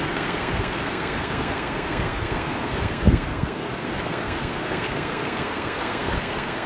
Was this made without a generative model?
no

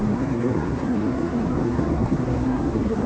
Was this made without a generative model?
no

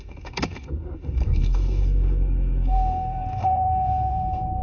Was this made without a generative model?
no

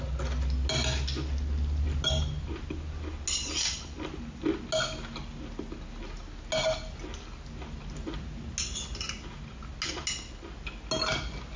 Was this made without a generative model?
yes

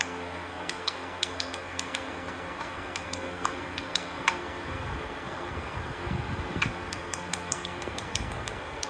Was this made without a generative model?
no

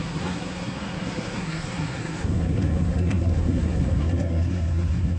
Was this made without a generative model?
no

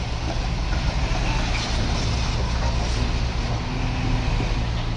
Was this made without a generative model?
yes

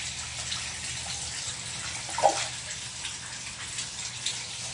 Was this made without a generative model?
yes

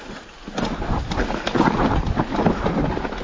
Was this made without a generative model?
yes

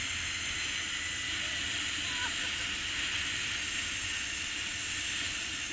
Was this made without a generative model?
yes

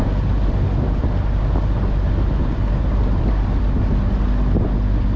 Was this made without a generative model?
yes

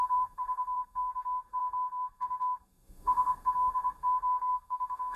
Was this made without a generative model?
no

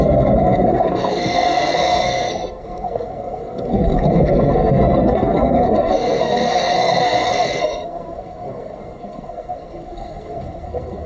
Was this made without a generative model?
no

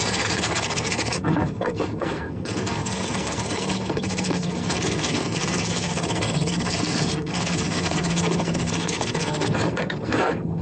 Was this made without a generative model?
no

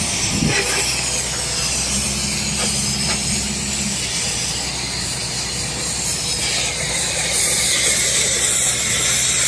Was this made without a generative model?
yes